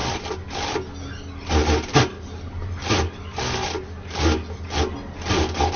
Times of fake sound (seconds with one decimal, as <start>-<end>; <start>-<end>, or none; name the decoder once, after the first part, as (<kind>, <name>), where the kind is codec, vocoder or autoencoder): none